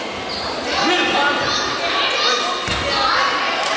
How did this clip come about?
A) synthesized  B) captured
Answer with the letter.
B